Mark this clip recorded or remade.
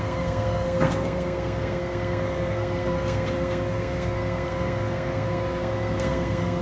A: remade